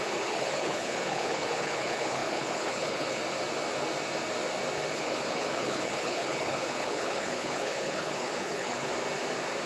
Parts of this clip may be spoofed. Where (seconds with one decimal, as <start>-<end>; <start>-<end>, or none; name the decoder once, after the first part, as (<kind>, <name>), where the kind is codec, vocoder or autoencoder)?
0.0-3.2 (codec, HILCodec); 4.9-8.9

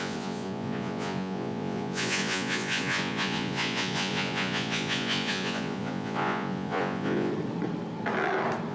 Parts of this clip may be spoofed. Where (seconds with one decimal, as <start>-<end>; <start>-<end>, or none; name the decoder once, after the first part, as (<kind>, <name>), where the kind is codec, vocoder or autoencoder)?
0.0-7.3 (vocoder, Vocos)

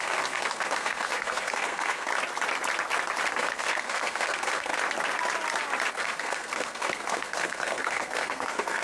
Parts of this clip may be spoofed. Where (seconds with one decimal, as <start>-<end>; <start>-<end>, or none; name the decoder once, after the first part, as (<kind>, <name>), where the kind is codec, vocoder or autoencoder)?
0.0-2.1 (codec, SNAC); 3.3-4.7; 5.9-8.8

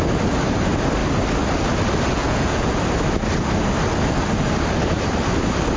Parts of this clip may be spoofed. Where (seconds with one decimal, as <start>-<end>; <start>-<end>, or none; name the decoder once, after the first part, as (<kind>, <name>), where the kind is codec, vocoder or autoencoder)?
2.2-2.7 (vocoder, Vocos)

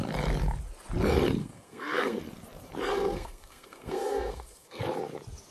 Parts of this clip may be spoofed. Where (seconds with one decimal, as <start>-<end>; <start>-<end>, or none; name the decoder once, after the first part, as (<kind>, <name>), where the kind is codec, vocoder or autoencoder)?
1.4-2.2 (codec, SNAC); 2.9-4.8